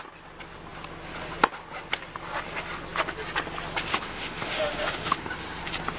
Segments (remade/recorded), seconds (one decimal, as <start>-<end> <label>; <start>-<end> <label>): 0.0-3.9 recorded; 3.9-5.6 remade; 5.6-6.0 recorded